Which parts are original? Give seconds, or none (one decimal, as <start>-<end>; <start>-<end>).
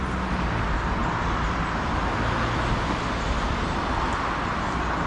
0.0-1.0; 3.9-5.1